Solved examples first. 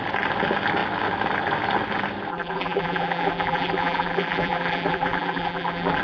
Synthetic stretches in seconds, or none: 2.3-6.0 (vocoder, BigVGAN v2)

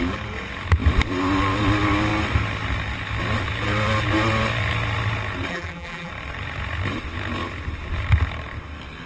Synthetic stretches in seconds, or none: 5.5-6.1 (vocoder, BigVGAN v2)

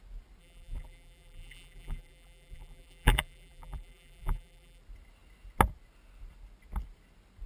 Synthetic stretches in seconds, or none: 0.4-4.8 (vocoder, BigVGAN v2)

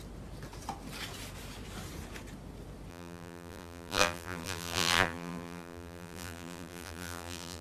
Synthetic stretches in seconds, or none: 2.9-7.6 (vocoder, BigVGAN v2)

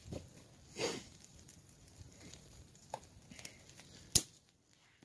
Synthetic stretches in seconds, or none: 0.0-0.5 (vocoder, BigVGAN v2); 1.1-3.1

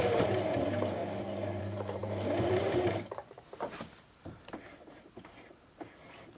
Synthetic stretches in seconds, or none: 0.0-1.0 (vocoder, BigVGAN v2); 1.6-6.4